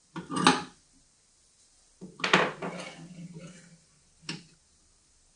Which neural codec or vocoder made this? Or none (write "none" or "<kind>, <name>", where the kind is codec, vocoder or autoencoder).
none